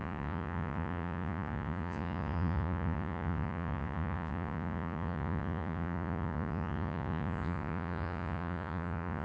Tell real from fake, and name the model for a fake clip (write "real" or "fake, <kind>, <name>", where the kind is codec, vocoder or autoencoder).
fake, vocoder, Vocos